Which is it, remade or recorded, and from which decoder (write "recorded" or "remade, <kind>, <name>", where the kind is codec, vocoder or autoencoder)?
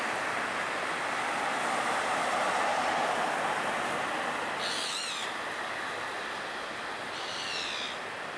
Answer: recorded